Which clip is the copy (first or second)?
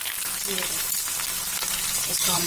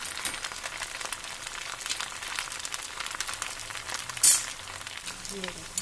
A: first